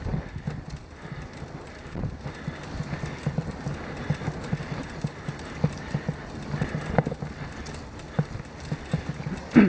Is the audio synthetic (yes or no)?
no